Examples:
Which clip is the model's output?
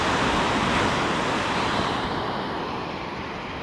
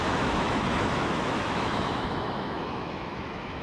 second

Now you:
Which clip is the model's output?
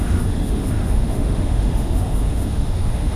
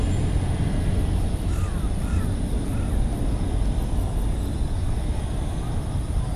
first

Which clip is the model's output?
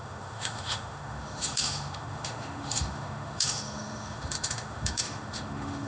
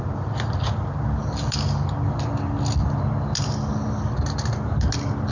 first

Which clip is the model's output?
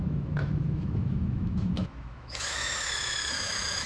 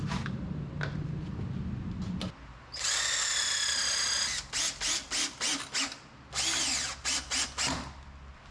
first